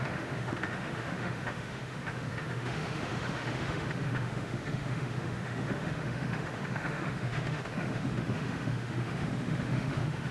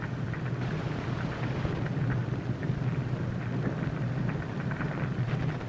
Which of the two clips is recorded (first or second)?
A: second